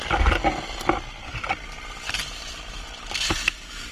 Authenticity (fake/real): real